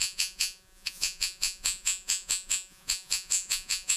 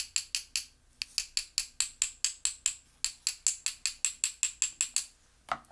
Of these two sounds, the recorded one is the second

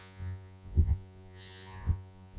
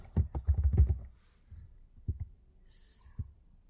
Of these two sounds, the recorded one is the second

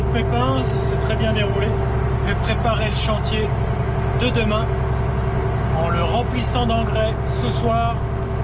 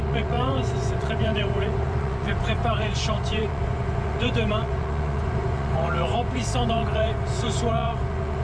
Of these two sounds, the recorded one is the first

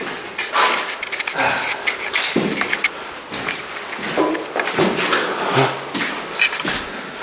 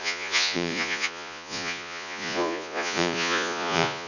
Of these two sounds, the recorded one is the first